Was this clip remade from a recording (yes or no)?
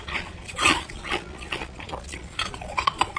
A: yes